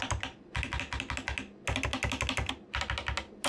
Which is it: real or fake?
real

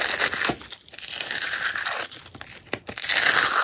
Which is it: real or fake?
real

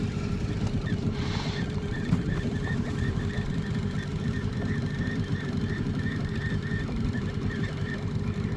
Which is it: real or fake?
fake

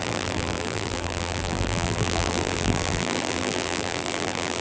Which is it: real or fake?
fake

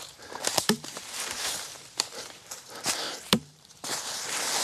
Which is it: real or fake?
fake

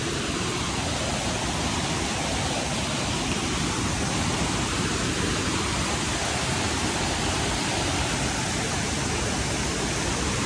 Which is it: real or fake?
real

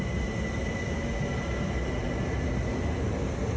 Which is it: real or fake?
real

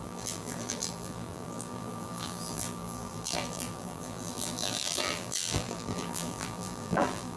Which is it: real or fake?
fake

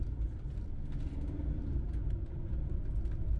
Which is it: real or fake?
real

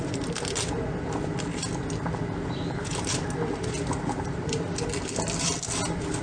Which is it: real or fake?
real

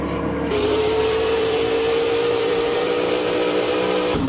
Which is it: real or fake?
fake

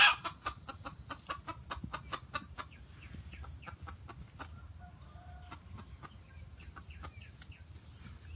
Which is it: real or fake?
real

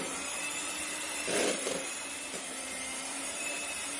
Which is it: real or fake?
fake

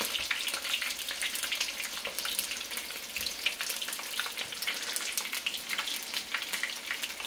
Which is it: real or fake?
real